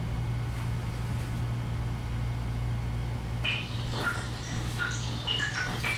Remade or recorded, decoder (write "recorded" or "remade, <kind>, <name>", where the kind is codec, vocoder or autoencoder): recorded